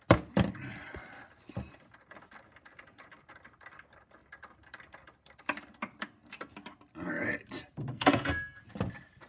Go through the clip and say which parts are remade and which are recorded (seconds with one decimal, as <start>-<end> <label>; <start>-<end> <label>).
0.0-7.9 recorded; 7.9-8.6 remade; 8.6-9.3 recorded